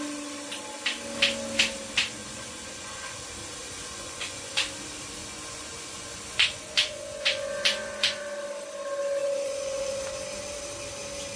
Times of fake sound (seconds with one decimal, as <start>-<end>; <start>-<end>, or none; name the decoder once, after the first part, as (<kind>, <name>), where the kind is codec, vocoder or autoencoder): 2.2-3.2 (vocoder, Vocos); 3.6-4.5; 5.2-8.2; 9.2-10.0